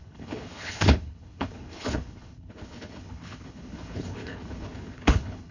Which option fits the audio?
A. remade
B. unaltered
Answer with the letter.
A